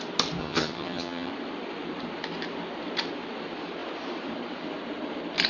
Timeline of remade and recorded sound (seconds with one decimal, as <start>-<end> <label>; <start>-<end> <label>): 0.0-0.4 recorded; 0.4-1.3 remade; 1.3-5.5 recorded